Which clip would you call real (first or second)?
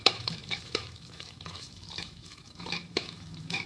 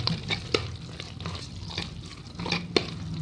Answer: second